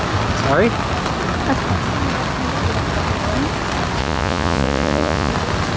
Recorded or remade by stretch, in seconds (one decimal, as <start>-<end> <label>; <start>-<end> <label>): 0.0-4.0 recorded; 4.0-5.3 remade; 5.3-5.8 recorded